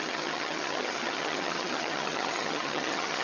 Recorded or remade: remade